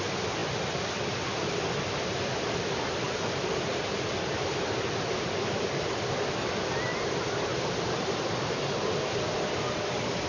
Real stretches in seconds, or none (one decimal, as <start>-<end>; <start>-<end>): 0.0-10.3